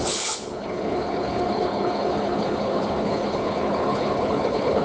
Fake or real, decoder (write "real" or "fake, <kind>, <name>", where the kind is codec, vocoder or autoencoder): fake, codec, HILCodec